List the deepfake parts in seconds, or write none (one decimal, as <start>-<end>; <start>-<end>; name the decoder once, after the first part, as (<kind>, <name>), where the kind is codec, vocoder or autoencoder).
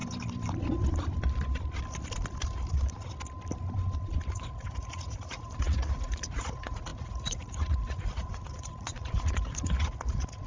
4.3-10.5 (vocoder, Vocos)